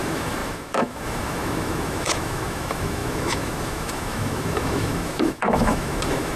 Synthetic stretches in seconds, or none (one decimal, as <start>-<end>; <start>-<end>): 0.0-6.4